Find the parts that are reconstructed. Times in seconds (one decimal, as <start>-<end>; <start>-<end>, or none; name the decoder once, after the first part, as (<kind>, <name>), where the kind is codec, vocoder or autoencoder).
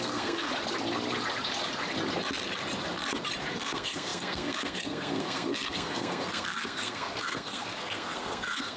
0.0-0.5 (codec, SNAC); 3.5-8.8